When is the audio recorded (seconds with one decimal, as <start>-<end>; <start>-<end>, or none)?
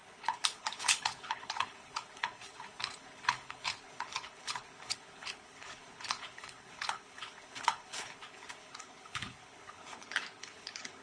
none